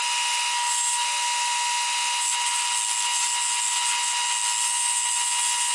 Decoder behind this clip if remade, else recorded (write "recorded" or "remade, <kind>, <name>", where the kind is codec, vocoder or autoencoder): recorded